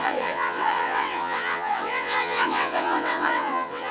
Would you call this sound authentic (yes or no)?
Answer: no